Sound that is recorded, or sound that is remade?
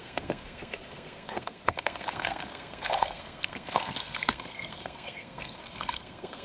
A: remade